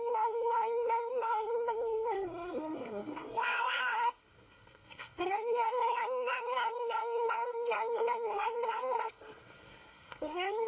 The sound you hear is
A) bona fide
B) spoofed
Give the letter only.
B